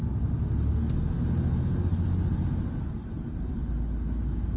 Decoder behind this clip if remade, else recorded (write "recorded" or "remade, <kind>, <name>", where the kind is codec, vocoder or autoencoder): recorded